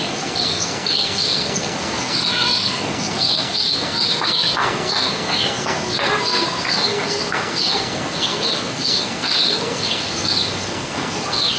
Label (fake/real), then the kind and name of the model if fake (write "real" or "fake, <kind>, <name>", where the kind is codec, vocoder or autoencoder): fake, codec, SNAC